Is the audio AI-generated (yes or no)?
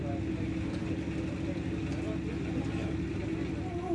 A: no